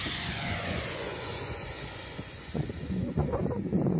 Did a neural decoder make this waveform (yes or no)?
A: yes